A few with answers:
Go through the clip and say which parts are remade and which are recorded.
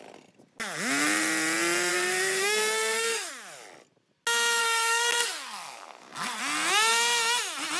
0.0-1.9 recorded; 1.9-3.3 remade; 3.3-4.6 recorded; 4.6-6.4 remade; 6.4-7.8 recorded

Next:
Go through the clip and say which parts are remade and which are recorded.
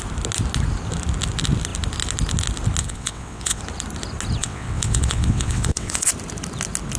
0.0-2.8 recorded; 2.8-3.6 remade; 3.6-4.4 recorded; 4.4-6.1 remade; 6.1-7.0 recorded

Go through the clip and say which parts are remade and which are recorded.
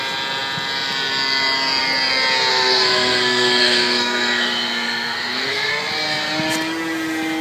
0.0-2.5 recorded; 2.5-5.7 remade; 5.7-7.4 recorded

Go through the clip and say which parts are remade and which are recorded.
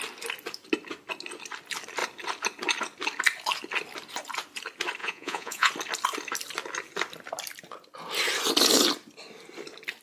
0.0-5.0 recorded; 5.0-5.7 remade; 5.7-10.0 recorded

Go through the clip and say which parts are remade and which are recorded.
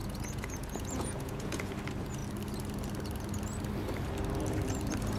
0.0-1.7 remade; 1.7-5.2 recorded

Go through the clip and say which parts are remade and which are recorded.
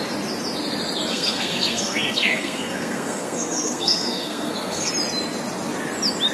0.0-1.1 recorded; 1.1-4.9 remade; 4.9-6.3 recorded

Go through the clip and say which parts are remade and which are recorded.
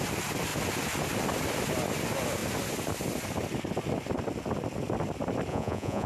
0.0-5.5 recorded; 5.5-6.1 remade